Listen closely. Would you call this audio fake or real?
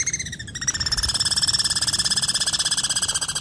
real